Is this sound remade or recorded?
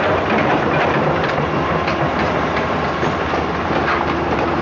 remade